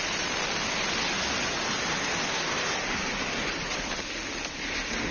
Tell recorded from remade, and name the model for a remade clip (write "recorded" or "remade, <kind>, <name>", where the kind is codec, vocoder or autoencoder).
recorded